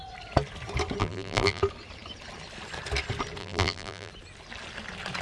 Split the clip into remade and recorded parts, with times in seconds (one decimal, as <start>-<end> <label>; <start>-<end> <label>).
0.0-1.0 recorded; 1.0-1.6 remade; 1.6-3.4 recorded; 3.4-4.1 remade; 4.1-5.2 recorded